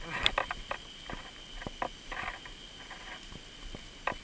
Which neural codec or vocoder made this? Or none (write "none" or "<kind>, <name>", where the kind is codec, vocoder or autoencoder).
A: none